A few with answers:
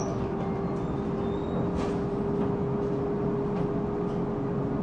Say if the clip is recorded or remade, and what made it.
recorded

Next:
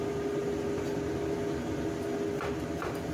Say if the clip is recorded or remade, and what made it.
recorded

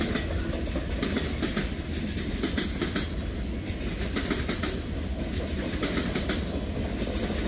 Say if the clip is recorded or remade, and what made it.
recorded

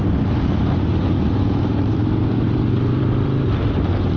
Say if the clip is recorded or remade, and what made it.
remade, vocoder, BigVGAN v2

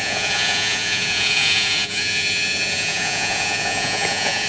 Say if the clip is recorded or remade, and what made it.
remade, vocoder, Vocos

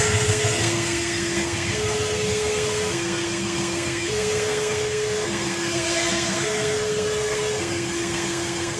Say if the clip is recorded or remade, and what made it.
remade, codec, SNAC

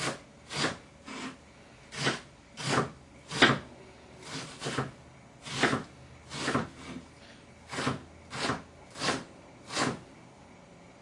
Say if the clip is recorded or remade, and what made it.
recorded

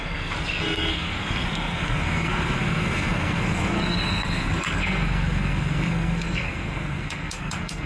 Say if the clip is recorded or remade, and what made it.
remade, codec, SNAC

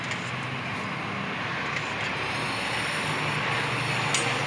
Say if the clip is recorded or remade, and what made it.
recorded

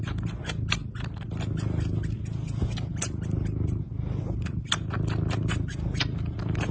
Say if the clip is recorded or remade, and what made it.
recorded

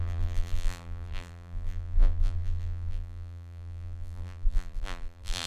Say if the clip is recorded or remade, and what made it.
remade, vocoder, BigVGAN v2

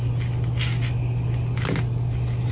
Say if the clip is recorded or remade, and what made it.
recorded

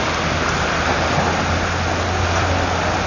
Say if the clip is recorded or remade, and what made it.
recorded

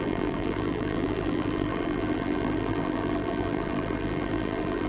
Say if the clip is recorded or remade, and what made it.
remade, vocoder, BigVGAN v2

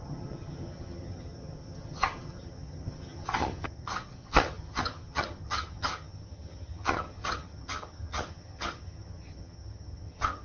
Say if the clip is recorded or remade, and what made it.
remade, vocoder, HiFi-GAN